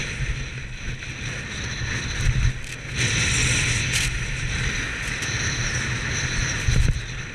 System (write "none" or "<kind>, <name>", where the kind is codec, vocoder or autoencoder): none